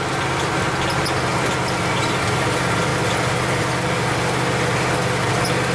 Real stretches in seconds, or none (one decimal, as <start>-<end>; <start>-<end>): 0.0-2.9; 3.6-5.7